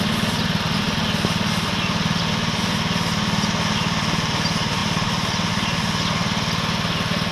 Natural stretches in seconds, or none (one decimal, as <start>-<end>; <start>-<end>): 0.0-7.3